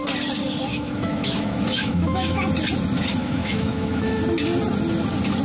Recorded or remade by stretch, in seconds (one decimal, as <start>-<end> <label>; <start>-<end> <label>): 0.0-0.7 recorded; 0.7-2.5 remade; 2.5-3.2 recorded; 3.2-4.2 remade; 4.2-5.4 recorded